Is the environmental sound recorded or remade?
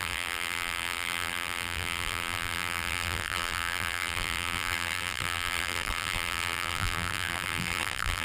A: remade